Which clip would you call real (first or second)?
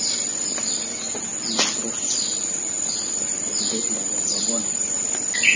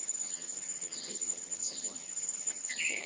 first